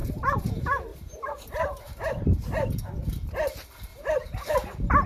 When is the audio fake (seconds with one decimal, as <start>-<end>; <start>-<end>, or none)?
0.0-0.5; 0.9-2.8; 3.9-4.5